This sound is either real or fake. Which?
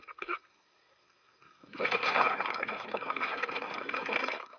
fake